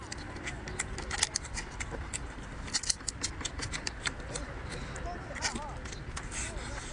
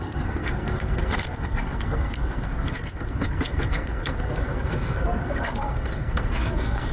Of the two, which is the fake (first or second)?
second